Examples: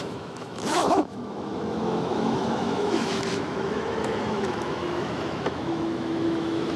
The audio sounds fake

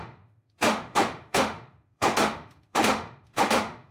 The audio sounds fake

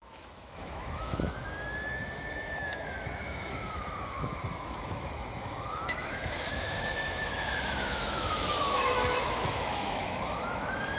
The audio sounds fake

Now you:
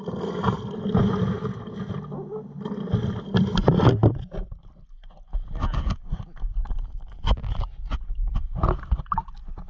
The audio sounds real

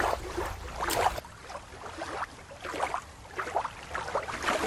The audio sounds real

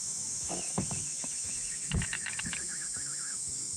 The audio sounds fake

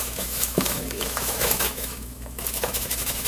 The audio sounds fake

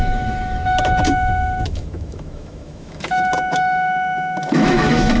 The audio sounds fake